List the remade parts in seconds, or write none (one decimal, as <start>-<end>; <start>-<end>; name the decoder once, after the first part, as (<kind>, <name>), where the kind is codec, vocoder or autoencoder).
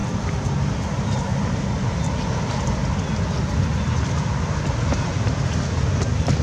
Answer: none